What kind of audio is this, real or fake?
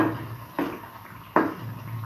real